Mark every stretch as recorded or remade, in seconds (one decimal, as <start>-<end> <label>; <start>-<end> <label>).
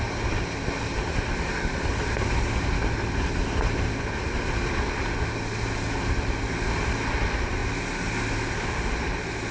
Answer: 0.0-9.5 recorded